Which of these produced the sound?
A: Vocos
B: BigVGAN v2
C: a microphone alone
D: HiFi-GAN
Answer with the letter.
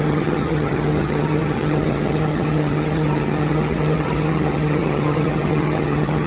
D